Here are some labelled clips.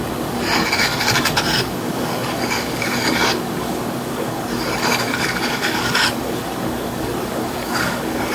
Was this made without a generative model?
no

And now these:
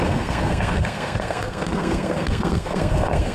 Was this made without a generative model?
no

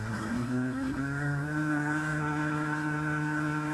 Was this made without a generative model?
no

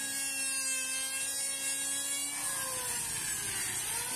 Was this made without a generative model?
yes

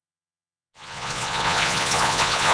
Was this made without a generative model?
no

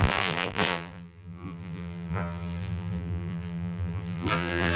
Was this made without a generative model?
no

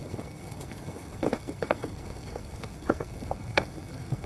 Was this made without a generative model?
no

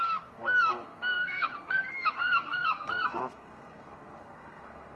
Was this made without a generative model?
no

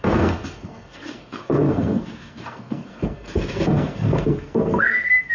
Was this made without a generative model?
no